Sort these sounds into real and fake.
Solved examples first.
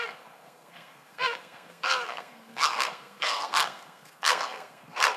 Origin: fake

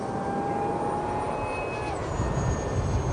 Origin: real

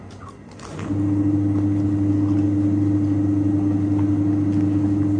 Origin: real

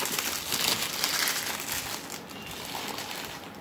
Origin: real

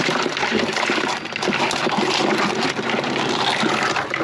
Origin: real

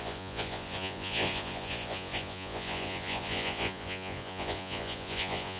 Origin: fake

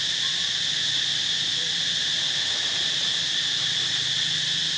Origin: real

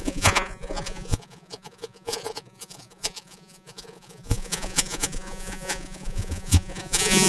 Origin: fake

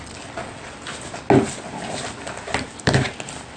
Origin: real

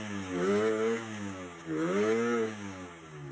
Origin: fake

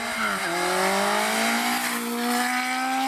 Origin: real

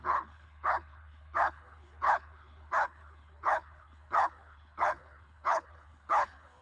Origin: fake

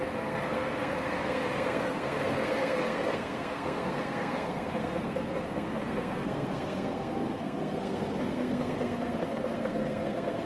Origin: fake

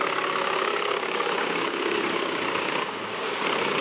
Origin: fake